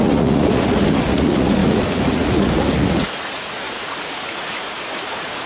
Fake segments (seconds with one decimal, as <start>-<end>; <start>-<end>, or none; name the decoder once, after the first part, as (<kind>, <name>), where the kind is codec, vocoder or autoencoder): 0.0-5.5 (vocoder, Vocos)